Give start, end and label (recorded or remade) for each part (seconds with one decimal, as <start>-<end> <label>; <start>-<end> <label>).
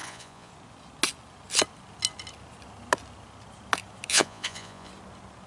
0.0-0.5 remade; 0.5-4.1 recorded; 4.1-4.9 remade; 4.9-5.5 recorded